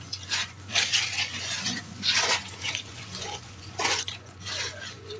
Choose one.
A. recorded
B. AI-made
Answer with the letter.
B